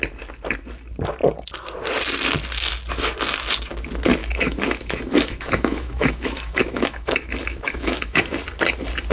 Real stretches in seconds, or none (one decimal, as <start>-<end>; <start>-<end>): 0.0-4.2; 8.3-9.1